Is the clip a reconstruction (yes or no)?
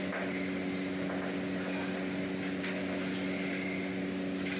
no